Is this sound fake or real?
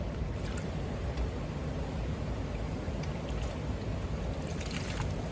real